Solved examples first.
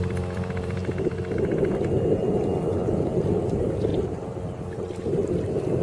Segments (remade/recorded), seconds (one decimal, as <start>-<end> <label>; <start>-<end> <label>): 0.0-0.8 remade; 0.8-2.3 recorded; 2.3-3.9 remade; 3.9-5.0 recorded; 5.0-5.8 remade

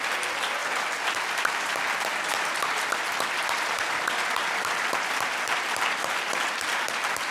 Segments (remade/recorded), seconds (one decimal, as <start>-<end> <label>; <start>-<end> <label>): 0.0-7.3 recorded

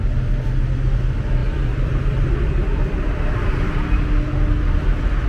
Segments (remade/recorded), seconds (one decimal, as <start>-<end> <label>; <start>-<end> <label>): 0.0-1.4 recorded; 1.4-3.8 remade; 3.8-5.3 recorded

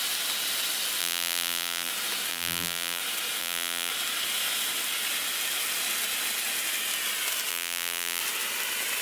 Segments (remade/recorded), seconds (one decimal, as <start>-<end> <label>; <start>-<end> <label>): 0.0-1.0 recorded; 1.0-1.9 remade; 1.9-2.3 recorded; 2.3-3.0 remade; 3.0-3.4 recorded; 3.4-3.9 remade; 3.9-7.5 recorded; 7.5-8.2 remade; 8.2-9.0 recorded

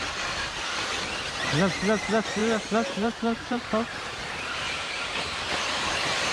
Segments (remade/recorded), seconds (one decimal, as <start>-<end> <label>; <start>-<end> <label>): 0.0-2.4 recorded; 2.4-6.3 remade

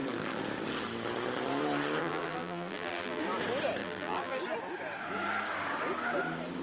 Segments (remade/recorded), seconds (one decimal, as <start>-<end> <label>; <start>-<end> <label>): 0.0-2.0 recorded; 2.0-3.2 remade; 3.2-3.8 recorded; 3.8-4.4 remade; 4.4-6.6 recorded

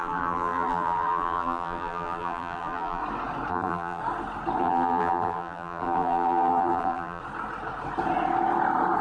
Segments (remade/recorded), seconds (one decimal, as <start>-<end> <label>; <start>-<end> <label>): 0.0-3.0 remade; 3.0-3.5 recorded; 3.5-4.0 remade; 4.0-4.6 recorded; 4.6-7.2 remade; 7.2-9.0 recorded

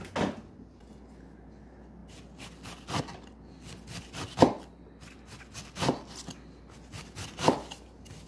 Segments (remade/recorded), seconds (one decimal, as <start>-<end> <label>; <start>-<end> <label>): 0.0-8.3 recorded